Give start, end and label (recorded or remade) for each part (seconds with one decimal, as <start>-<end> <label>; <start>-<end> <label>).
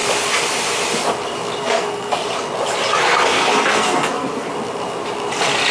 0.0-1.6 recorded; 1.6-2.2 remade; 2.2-3.0 recorded; 3.0-4.5 remade; 4.5-5.7 recorded